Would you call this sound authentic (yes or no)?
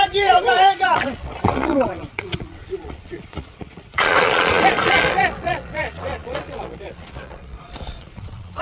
no